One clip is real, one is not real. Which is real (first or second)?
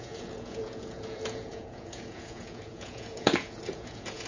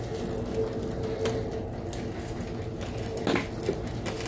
second